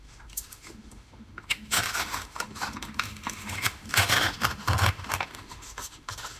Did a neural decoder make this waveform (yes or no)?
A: yes